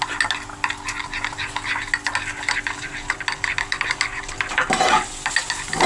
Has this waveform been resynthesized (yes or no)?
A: no